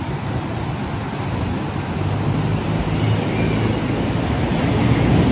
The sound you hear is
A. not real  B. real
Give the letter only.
B